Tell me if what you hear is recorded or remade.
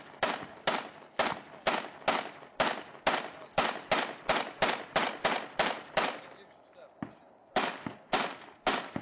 recorded